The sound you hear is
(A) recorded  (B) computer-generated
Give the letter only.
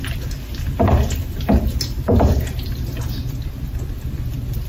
A